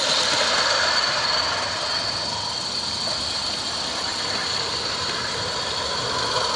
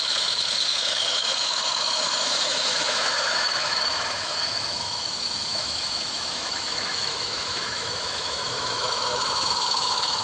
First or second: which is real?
first